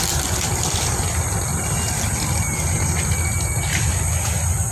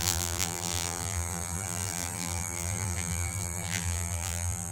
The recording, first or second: first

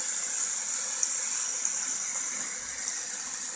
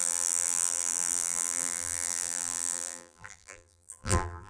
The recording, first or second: first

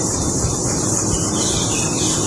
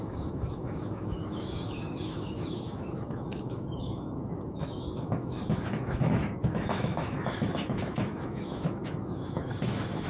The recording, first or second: first